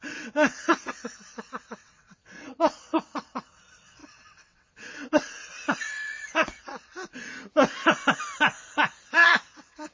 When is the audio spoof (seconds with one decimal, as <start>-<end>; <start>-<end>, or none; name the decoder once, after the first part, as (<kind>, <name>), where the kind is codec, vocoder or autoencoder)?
0.0-6.9 (vocoder, WaveNeXt); 8.7-9.9